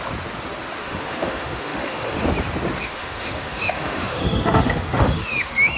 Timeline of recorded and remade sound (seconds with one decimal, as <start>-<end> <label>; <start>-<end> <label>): 0.0-0.8 recorded; 0.8-2.2 remade; 2.2-2.8 recorded; 2.8-5.8 remade